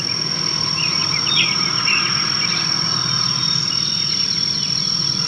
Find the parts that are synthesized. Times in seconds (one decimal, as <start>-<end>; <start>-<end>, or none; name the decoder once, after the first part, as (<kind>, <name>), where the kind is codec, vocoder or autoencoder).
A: none